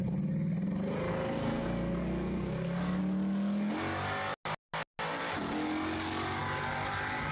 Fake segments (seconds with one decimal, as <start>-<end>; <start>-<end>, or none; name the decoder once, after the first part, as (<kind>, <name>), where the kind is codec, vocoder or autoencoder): 1.1-3.0 (codec, SNAC)